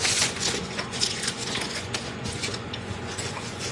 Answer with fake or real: fake